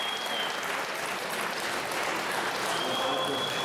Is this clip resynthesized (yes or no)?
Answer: no